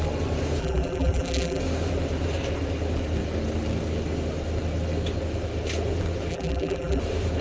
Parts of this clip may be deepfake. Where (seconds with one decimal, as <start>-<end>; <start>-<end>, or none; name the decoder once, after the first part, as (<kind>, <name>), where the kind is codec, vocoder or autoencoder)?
0.6-1.6 (vocoder, BigVGAN v2); 6.3-7.0